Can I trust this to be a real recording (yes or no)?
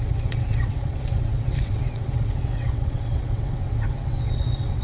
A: no